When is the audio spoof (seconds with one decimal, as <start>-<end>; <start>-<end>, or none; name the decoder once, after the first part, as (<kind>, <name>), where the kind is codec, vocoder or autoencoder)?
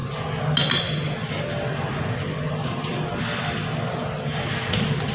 none